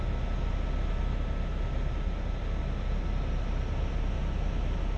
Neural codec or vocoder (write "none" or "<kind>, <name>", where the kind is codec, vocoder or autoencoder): none